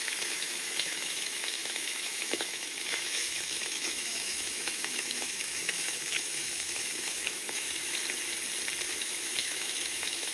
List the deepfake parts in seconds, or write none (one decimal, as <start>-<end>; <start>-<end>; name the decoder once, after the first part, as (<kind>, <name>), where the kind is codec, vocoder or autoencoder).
0.0-8.0 (autoencoder, DAC-VAE); 8.8-10.3